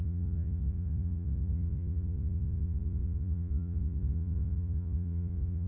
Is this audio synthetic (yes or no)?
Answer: yes